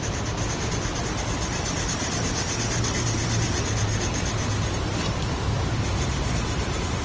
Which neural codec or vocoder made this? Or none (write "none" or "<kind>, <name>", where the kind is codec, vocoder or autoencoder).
none